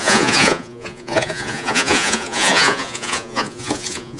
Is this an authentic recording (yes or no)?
no